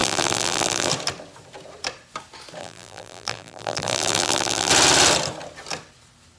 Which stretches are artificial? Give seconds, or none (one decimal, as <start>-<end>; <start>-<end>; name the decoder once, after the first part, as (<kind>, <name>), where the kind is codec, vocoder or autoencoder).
0.0-0.9 (vocoder, BigVGAN v2); 2.6-4.7